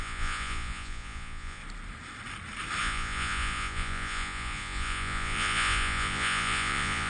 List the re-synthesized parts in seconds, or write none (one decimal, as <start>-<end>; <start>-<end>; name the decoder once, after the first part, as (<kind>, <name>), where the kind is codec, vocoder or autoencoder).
0.0-1.6 (vocoder, Vocos); 2.8-7.1

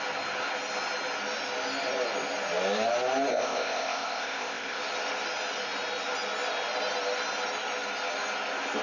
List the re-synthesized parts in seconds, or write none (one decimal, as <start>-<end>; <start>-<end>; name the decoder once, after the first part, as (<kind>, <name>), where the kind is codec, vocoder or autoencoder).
3.3-4.8 (codec, ZipCodec)

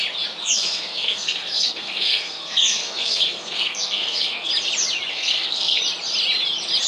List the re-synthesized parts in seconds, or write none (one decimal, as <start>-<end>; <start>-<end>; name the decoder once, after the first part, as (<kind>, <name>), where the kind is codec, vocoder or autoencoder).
0.4-4.5 (codec, SNAC); 5.1-5.8

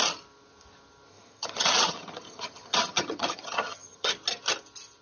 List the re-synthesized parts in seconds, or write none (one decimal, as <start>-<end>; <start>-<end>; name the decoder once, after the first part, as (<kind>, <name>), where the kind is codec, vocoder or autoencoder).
1.1-4.1 (vocoder, HiFi-GAN)

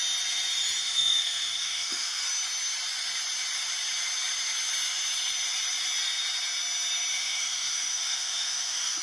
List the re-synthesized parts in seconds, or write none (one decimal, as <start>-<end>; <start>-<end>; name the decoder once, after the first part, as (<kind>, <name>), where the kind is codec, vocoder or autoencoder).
0.8-2.2 (autoencoder, DAC-VAE); 7.1-9.0

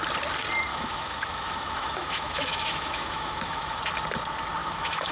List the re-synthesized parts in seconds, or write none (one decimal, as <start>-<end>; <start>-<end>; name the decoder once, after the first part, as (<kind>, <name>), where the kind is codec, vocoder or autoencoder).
0.7-3.8 (autoencoder, DAC-VAE); 4.6-5.1